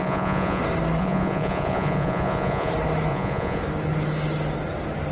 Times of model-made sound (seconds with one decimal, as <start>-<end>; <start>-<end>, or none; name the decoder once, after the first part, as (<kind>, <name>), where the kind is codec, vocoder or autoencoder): 0.0-0.6 (vocoder, Vocos); 1.0-2.7; 3.1-3.6